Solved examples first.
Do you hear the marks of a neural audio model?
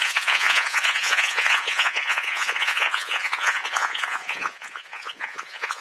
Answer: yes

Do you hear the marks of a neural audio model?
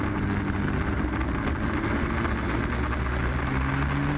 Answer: no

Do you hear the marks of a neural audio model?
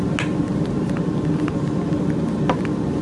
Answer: no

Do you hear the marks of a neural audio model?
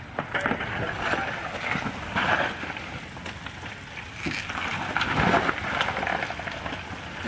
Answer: no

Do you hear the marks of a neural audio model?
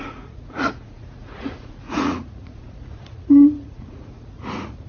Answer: yes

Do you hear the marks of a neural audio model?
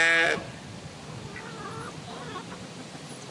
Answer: no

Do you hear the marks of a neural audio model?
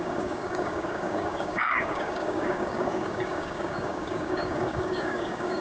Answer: yes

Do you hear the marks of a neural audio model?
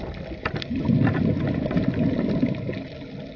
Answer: no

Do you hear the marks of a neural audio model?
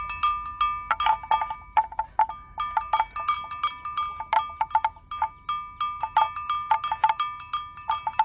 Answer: no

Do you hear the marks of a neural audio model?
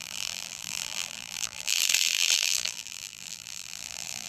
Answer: yes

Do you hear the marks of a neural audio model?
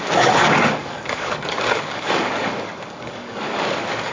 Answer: yes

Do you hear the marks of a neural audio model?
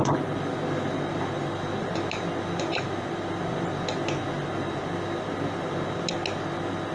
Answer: no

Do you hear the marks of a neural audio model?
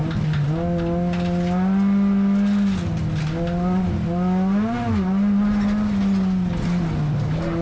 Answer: no